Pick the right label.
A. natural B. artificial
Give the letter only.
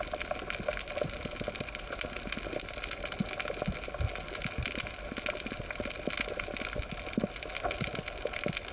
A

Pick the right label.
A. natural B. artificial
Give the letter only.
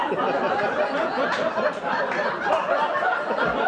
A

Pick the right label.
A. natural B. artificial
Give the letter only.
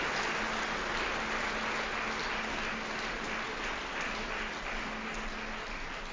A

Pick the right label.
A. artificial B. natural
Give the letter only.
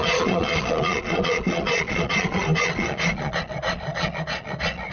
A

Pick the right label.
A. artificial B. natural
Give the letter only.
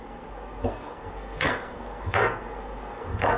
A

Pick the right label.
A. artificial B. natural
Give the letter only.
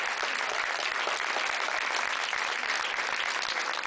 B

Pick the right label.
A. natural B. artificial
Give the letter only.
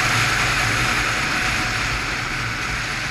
A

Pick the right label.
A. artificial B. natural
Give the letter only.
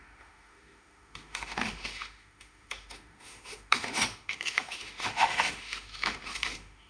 A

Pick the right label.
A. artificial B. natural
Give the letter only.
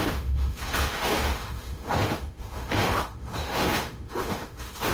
A